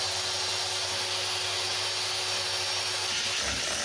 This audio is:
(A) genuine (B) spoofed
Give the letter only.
A